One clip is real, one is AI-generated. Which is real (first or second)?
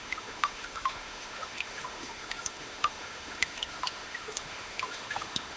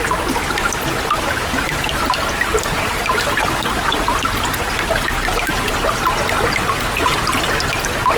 second